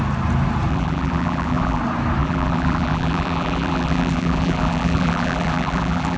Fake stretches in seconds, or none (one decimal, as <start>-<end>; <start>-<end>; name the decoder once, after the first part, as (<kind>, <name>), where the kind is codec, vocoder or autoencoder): 0.7-1.8 (vocoder, BigVGAN v2); 2.2-6.2